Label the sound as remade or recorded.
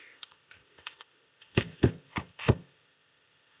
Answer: remade